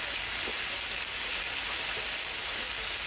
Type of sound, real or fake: real